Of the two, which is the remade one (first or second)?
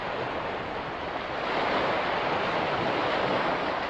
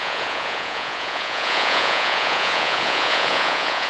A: second